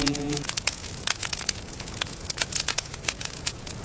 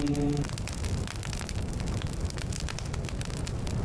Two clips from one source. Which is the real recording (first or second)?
second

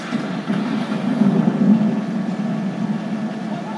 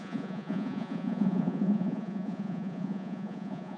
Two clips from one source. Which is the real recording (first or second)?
first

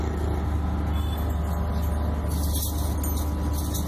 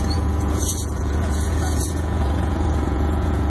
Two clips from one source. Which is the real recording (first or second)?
first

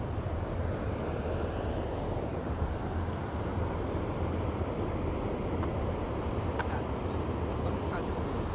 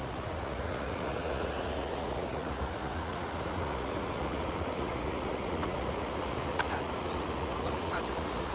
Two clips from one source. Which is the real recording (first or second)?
first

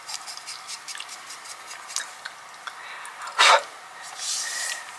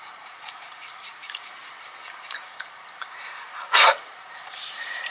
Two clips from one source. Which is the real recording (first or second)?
first